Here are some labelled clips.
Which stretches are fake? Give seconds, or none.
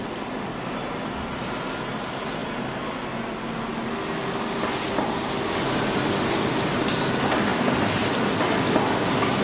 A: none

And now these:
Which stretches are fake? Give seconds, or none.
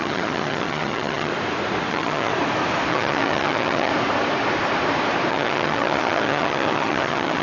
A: 0.0-1.3 (vocoder, HiFi-GAN); 1.9-2.3; 2.9-3.9; 5.3-7.4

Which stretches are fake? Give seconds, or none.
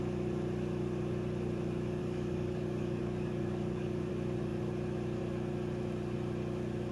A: 2.0-4.1 (codec, DAC)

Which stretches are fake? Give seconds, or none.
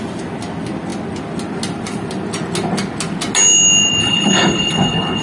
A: 4.0-5.2 (codec, HILCodec)